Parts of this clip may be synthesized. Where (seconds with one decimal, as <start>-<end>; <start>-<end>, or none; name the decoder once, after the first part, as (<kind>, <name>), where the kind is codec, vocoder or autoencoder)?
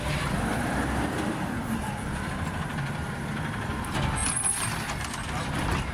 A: 0.0-5.9 (vocoder, BigVGAN v2)